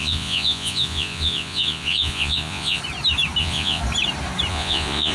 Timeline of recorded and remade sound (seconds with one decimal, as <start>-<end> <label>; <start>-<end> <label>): 0.0-2.8 remade; 2.8-3.4 recorded; 3.4-3.8 remade; 3.8-4.5 recorded; 4.5-5.1 remade